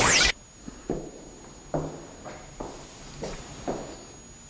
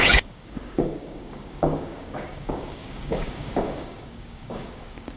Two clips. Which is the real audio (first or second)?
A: first